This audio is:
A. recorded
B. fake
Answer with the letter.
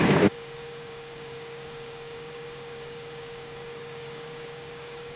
B